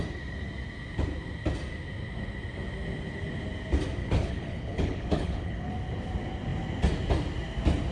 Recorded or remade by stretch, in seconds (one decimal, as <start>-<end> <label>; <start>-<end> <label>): 0.0-4.0 recorded; 4.0-5.7 remade; 5.7-7.9 recorded

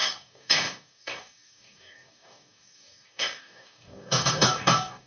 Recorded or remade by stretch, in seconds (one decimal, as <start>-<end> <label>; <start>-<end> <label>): 0.0-5.1 remade